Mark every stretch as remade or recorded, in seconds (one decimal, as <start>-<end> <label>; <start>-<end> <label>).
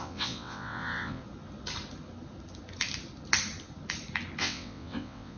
0.0-1.2 remade; 1.2-4.4 recorded; 4.4-5.4 remade